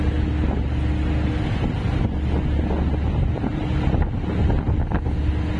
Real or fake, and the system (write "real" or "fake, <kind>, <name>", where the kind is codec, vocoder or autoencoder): real